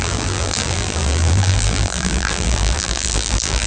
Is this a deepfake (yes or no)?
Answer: yes